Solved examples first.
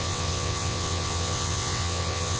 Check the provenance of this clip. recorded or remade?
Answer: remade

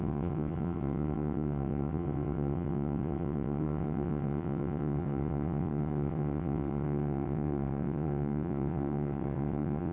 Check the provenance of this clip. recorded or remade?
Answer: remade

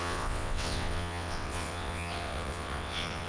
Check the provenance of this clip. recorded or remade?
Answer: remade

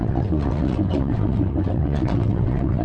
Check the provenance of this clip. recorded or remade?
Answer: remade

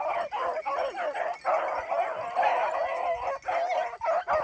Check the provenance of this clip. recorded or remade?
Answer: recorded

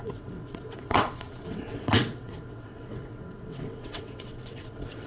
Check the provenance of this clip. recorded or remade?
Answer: remade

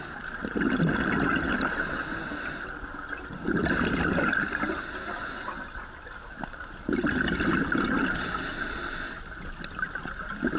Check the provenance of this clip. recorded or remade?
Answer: recorded